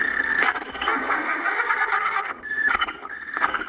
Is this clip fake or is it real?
fake